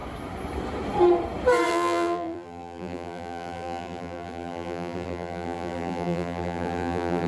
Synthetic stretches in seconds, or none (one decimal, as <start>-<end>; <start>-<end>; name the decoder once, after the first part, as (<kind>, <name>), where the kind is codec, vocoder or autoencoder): 1.7-7.3 (vocoder, BigVGAN v2)